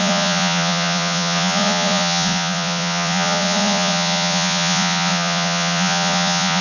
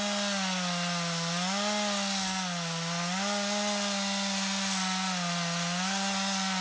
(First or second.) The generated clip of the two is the first